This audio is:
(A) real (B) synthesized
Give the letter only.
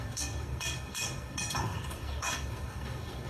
B